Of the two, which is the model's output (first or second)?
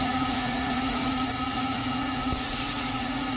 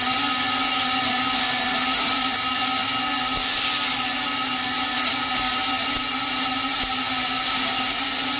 first